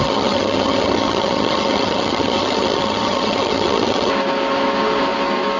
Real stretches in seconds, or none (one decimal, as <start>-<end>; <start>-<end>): 4.1-5.6